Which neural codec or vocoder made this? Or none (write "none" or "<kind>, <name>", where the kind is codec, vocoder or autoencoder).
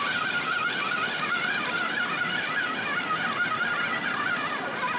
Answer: vocoder, BigVGAN v2